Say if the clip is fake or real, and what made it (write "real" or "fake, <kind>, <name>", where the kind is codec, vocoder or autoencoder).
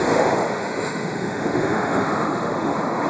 fake, autoencoder, DAC-VAE